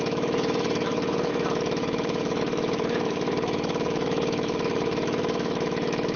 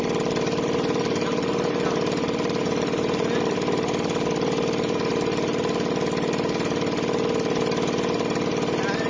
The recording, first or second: second